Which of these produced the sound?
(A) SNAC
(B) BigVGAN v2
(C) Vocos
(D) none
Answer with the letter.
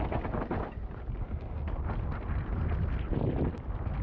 D